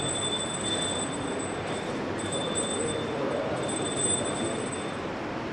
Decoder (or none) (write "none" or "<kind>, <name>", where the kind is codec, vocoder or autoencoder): vocoder, BigVGAN v2